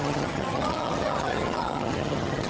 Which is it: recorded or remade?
remade